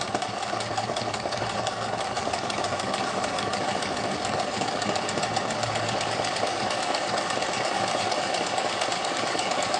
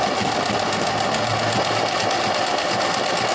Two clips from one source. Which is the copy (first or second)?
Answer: first